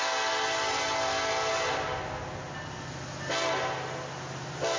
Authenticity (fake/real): real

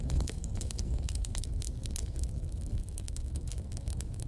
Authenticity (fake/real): fake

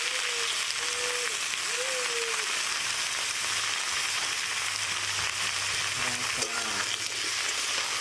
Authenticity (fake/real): real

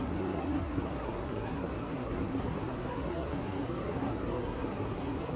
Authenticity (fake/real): fake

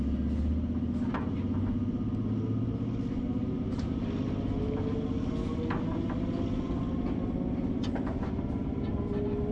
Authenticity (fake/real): real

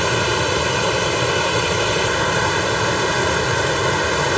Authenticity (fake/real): real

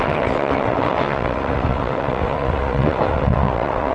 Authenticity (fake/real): fake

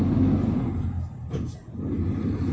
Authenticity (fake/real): real